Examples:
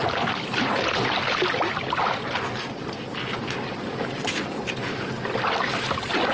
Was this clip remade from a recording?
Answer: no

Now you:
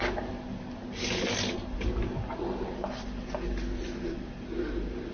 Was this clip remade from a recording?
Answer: no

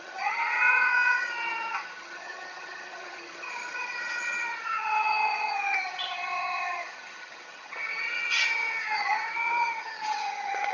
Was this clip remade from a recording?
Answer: yes